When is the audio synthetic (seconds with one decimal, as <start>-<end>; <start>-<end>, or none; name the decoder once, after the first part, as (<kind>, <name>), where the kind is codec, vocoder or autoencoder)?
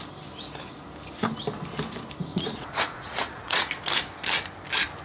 2.3-3.7 (vocoder, Vocos)